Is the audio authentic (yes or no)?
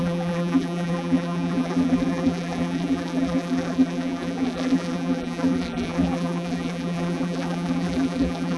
no